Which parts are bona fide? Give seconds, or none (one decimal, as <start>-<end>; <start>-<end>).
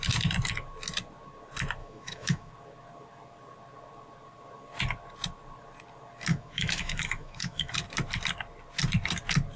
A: 0.0-1.8; 2.5-6.3; 7.7-9.6